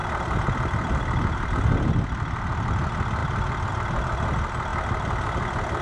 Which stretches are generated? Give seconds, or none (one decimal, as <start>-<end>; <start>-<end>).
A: none